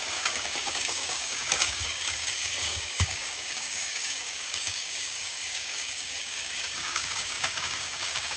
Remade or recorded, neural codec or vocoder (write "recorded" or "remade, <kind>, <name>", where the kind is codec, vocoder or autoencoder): remade, codec, DAC